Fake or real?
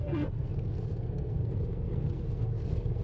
fake